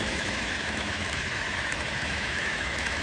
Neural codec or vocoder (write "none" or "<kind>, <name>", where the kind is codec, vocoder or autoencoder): autoencoder, DAC-VAE